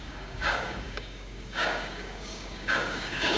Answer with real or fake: fake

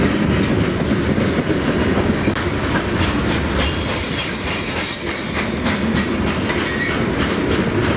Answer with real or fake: real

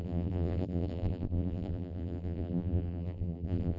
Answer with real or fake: fake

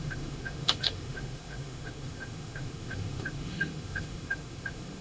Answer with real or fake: fake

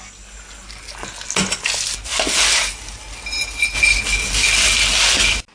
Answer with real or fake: real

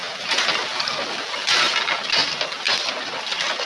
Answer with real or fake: real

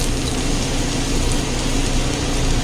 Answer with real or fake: real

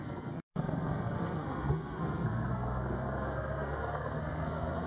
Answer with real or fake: fake